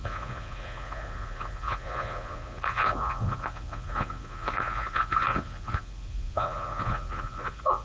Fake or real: fake